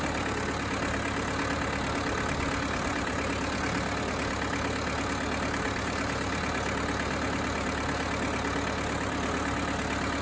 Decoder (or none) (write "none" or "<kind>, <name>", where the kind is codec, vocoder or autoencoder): none